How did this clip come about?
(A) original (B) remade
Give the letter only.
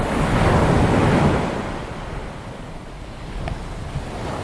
A